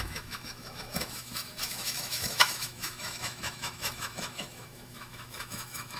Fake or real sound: fake